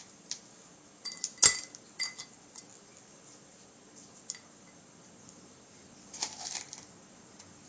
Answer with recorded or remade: recorded